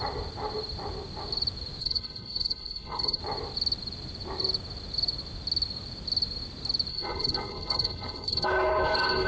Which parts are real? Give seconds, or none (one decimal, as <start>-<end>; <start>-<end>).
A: 0.0-1.8; 3.2-6.9

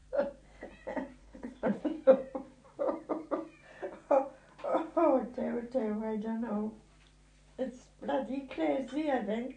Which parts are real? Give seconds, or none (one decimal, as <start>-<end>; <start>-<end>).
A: 0.0-1.2; 1.8-9.6

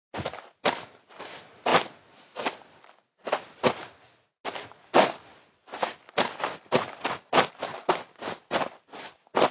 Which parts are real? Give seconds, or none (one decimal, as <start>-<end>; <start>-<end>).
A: 0.0-9.5

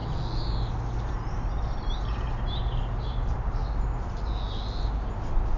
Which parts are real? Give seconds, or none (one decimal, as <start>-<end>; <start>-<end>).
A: 0.0-1.1; 3.6-5.1